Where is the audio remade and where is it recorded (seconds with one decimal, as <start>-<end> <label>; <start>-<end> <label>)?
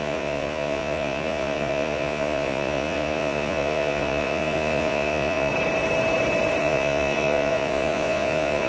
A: 0.0-5.5 remade; 5.5-6.6 recorded; 6.6-8.7 remade